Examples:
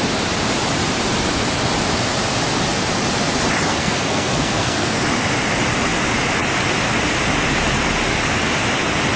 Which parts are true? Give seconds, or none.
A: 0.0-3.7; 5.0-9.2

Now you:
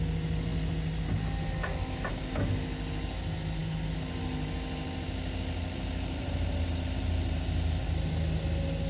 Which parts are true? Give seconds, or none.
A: 0.0-8.9

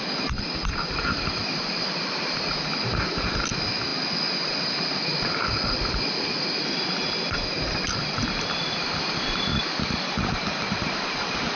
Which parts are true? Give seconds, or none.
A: 0.0-11.6